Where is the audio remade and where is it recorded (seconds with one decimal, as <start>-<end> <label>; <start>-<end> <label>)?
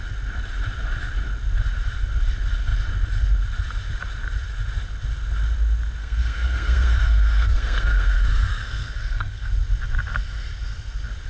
0.0-6.0 recorded; 6.0-9.5 remade; 9.5-11.3 recorded